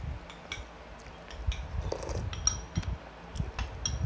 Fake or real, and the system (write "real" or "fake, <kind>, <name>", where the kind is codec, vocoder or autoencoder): real